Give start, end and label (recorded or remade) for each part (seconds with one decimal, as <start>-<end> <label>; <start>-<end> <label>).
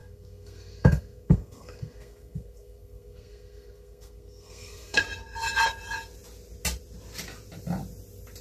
0.0-5.0 remade; 5.0-8.4 recorded